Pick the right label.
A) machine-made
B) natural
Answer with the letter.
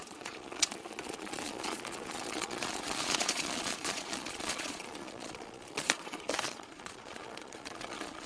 A